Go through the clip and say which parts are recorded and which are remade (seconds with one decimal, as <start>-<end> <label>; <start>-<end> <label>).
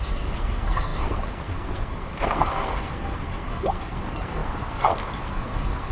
0.0-5.9 remade